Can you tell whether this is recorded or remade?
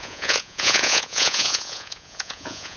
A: remade